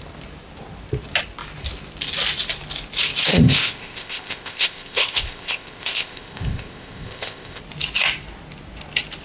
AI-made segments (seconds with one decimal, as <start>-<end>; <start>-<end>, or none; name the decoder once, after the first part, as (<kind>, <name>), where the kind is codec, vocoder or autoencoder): 3.3-7.6 (codec, ZipCodec)